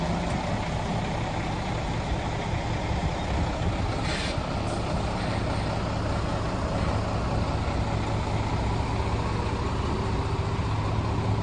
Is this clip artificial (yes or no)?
no